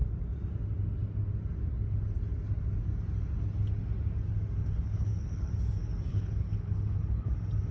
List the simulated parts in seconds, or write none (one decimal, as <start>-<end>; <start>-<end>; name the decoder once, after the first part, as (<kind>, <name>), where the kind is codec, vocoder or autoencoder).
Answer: 4.6-5.5 (codec, HILCodec); 6.1-7.3